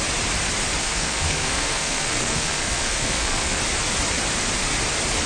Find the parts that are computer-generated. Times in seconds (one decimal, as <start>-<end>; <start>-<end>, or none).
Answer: 0.8-3.6